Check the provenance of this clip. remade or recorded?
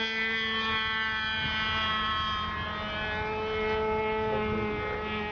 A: recorded